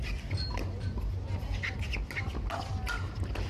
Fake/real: real